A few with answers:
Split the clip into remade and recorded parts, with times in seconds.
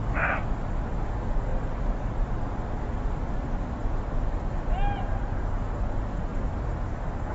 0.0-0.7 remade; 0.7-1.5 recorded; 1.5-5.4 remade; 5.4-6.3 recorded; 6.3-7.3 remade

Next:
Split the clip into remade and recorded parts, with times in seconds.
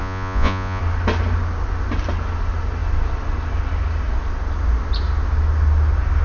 0.0-0.8 remade; 0.8-6.2 recorded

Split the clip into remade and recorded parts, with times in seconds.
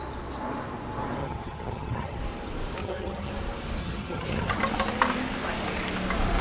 0.0-1.2 recorded; 1.2-2.2 remade; 2.2-2.8 recorded; 2.8-3.3 remade; 3.3-3.8 recorded; 3.8-4.6 remade; 4.6-6.4 recorded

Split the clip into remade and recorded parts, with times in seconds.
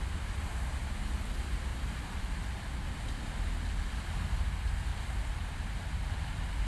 0.0-1.7 recorded; 1.7-2.8 remade; 2.8-4.9 recorded; 4.9-6.1 remade; 6.1-6.7 recorded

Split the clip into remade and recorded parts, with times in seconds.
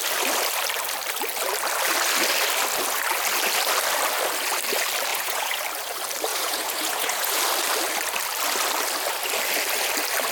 0.0-5.1 recorded; 5.1-5.6 remade; 5.6-6.3 recorded; 6.3-7.4 remade; 7.4-10.3 recorded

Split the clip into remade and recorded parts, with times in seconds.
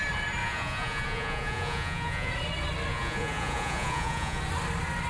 0.0-0.4 recorded; 0.4-2.3 remade; 2.3-2.9 recorded; 2.9-4.4 remade; 4.4-5.1 recorded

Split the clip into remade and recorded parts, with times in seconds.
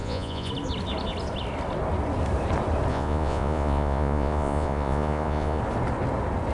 0.0-0.5 remade; 0.5-2.9 recorded; 2.9-5.6 remade; 5.6-6.5 recorded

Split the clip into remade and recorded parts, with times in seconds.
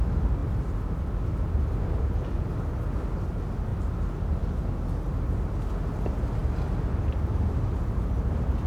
0.0-0.4 recorded; 0.4-2.0 remade; 2.0-8.7 recorded